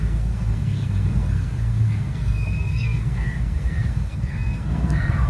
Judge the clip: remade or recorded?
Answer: remade